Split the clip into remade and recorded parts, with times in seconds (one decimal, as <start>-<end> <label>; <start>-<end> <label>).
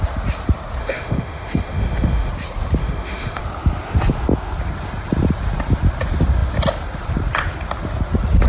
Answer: 0.0-0.8 recorded; 0.8-2.3 remade; 2.3-2.8 recorded; 2.8-3.4 remade; 3.4-8.5 recorded